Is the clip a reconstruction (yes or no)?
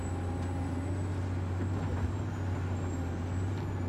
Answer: no